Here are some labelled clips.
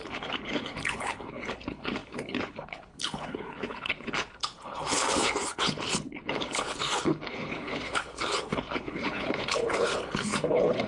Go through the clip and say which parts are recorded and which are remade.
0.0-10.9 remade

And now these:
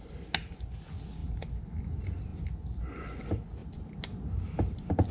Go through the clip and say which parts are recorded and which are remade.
0.0-5.1 recorded

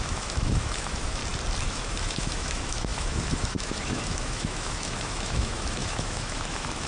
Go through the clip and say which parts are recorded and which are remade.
0.0-1.2 remade; 1.2-1.7 recorded; 1.7-6.9 remade

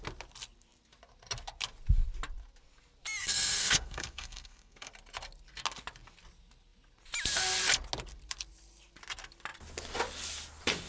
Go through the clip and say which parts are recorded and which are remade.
0.0-3.2 recorded; 3.2-4.9 remade; 4.9-10.9 recorded

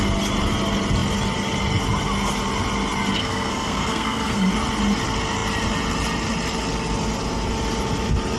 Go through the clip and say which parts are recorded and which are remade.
0.0-3.2 recorded; 3.2-4.5 remade; 4.5-8.4 recorded